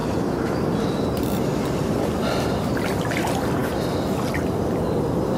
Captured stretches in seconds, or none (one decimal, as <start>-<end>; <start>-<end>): 0.0-3.2; 3.6-5.0